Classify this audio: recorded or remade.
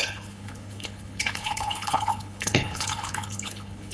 remade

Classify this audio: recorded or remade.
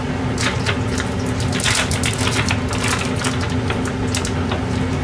recorded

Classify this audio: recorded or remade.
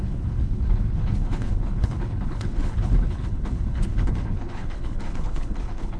remade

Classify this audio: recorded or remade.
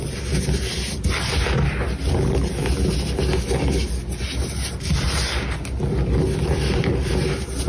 recorded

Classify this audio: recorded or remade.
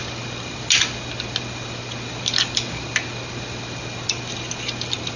recorded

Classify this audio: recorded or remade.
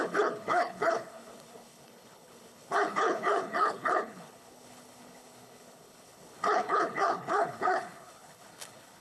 remade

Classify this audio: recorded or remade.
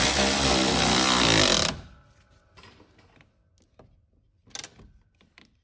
recorded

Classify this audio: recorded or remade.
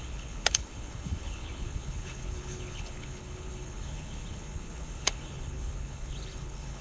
remade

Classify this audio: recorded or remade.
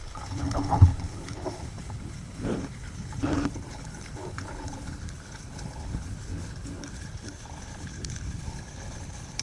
remade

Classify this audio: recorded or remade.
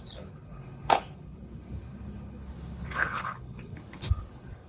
remade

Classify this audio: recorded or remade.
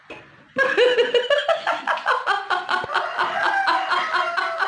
recorded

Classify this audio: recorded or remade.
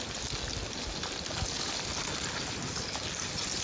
recorded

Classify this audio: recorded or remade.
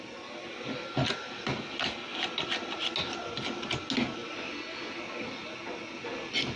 recorded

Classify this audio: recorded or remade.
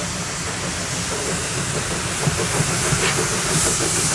recorded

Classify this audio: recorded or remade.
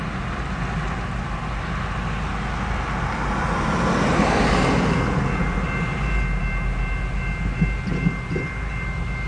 recorded